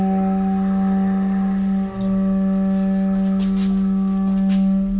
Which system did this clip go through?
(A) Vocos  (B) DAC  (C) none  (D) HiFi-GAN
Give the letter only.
C